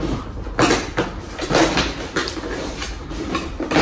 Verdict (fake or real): real